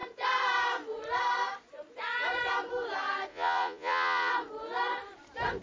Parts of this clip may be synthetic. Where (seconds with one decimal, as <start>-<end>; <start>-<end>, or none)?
3.3-4.3